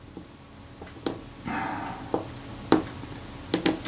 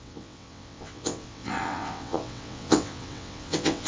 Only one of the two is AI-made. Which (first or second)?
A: second